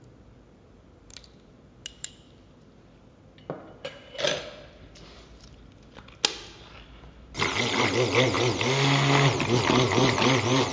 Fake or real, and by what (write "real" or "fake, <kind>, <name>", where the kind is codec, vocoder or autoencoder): real